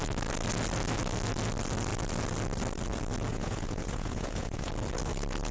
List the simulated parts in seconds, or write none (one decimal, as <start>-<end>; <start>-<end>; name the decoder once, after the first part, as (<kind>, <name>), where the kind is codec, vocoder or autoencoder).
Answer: 3.3-4.7 (vocoder, Vocos)